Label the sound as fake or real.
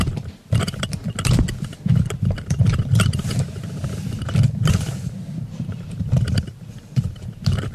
real